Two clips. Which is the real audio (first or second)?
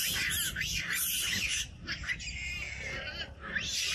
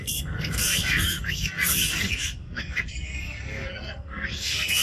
first